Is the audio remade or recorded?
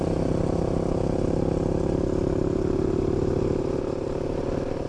recorded